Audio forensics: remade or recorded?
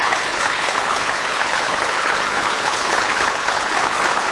remade